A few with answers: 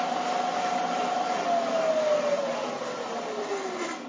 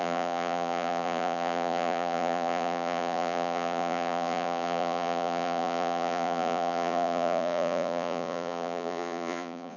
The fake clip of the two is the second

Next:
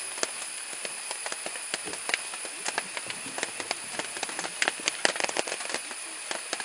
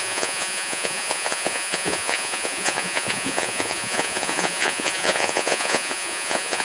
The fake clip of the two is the second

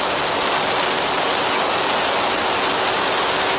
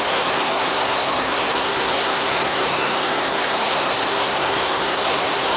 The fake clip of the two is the second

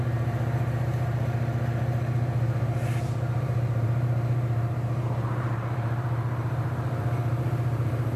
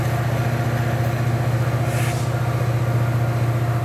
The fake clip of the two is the first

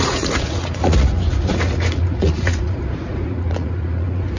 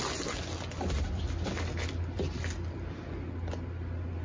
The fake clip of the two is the first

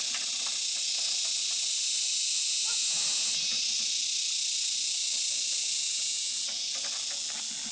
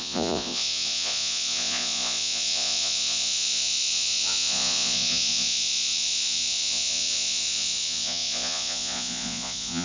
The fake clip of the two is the second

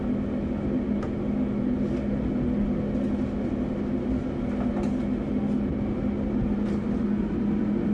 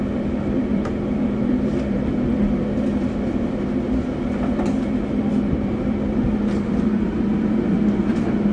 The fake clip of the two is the second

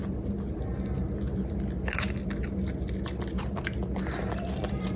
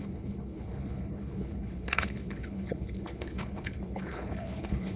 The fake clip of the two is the second